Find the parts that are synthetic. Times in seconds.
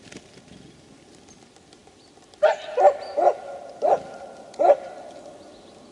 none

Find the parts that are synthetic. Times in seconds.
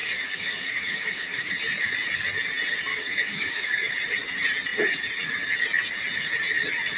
0.0-1.5 (codec, DAC); 2.9-3.9